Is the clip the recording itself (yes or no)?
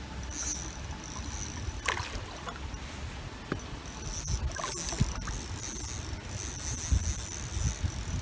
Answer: yes